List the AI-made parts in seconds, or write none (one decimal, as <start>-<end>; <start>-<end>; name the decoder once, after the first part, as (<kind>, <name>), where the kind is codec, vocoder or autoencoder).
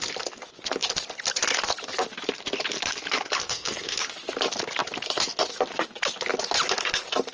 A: 3.4-4.0 (codec, SNAC)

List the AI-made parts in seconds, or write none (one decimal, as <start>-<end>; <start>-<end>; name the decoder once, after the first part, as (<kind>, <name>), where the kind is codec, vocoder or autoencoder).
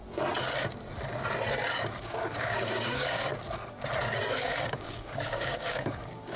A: 2.0-3.3 (codec, DAC); 4.3-6.4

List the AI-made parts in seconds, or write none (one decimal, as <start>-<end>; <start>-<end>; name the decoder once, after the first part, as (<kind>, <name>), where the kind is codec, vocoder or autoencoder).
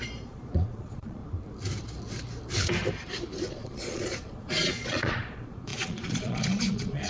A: 0.0-1.2 (vocoder, Vocos); 3.5-7.1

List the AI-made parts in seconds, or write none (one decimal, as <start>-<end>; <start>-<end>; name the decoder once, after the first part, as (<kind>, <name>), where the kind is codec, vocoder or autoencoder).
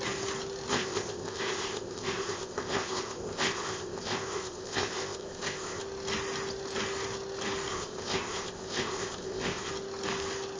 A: 0.7-5.8 (codec, ZipCodec); 7.7-9.7